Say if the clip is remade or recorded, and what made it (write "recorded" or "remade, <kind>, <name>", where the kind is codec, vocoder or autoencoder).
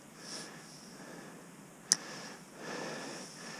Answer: recorded